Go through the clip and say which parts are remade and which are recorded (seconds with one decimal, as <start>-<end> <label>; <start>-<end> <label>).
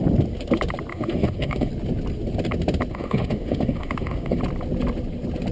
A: 0.0-0.9 recorded; 0.9-1.7 remade; 1.7-2.9 recorded; 2.9-4.4 remade; 4.4-5.5 recorded